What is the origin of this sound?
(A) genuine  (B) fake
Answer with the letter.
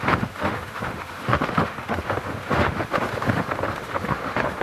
B